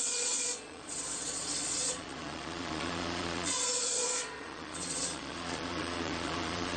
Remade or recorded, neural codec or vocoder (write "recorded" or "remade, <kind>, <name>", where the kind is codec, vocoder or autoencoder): remade, vocoder, Vocos